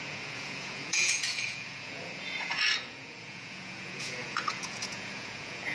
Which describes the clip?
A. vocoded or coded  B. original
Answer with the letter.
A